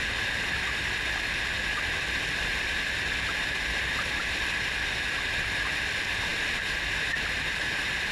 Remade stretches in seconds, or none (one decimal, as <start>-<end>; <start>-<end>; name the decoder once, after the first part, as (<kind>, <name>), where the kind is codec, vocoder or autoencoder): none